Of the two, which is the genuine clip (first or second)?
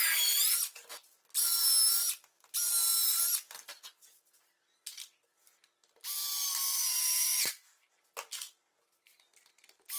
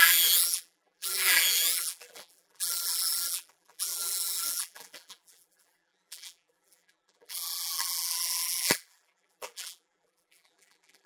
first